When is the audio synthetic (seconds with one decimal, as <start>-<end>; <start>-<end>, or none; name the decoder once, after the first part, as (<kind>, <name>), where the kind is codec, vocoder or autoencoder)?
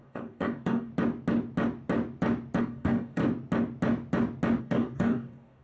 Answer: 0.0-0.9 (codec, DAC); 2.6-3.2; 4.6-5.6